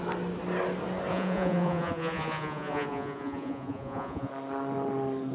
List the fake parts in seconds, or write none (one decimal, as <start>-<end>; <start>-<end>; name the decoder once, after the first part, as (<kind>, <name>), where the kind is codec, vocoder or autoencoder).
1.1-4.3 (vocoder, Vocos)